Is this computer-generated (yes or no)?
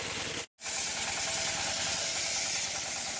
no